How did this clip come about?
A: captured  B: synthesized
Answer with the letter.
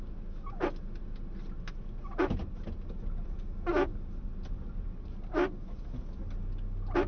A